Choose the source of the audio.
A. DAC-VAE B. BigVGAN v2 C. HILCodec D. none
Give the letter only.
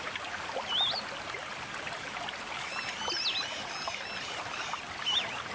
D